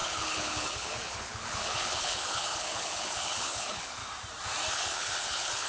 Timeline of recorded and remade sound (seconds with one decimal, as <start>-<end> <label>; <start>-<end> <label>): 0.0-4.0 remade; 4.0-4.7 recorded; 4.7-5.7 remade